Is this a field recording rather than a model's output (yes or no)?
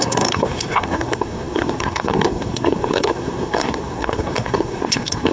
no